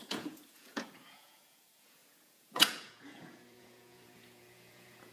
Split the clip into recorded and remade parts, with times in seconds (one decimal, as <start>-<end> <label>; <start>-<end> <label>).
0.0-5.1 remade